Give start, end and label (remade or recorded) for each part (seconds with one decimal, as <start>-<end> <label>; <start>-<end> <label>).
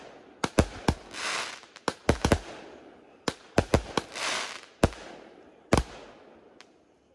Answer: 0.0-7.1 recorded